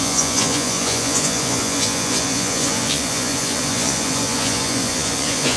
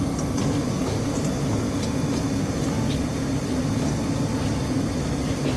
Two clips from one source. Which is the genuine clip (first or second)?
second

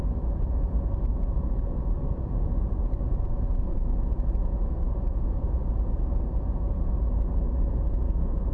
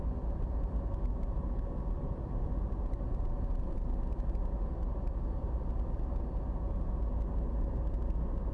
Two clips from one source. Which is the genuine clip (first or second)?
second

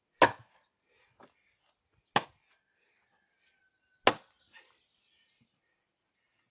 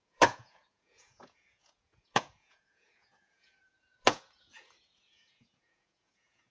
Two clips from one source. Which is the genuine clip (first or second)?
first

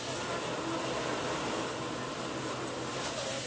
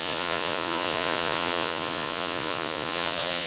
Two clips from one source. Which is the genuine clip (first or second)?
first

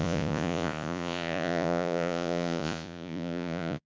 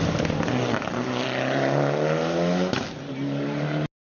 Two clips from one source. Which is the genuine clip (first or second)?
second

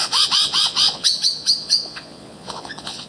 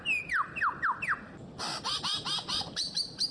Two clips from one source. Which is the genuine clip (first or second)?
second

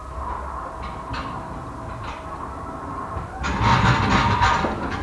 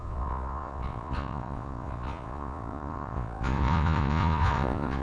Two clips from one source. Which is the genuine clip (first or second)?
first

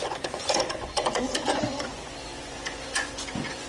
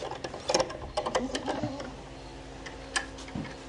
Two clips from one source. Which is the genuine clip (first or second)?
second